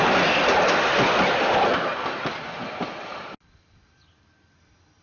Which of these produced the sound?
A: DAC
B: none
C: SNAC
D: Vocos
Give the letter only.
B